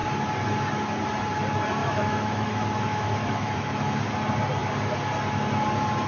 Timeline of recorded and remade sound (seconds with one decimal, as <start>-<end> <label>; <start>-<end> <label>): 0.0-1.8 recorded; 1.8-4.0 remade; 4.0-6.1 recorded